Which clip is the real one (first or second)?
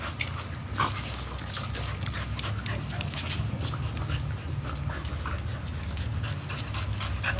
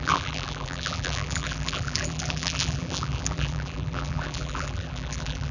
first